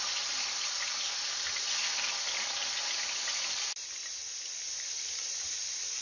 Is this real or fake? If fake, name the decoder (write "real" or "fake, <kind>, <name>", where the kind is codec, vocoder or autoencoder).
real